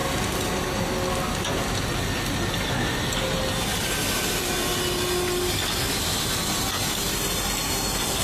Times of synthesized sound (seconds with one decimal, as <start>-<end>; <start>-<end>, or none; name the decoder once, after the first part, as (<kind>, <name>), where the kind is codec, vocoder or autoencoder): none